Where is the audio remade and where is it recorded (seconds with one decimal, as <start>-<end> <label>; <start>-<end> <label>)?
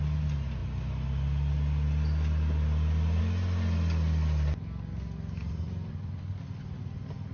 0.0-7.3 recorded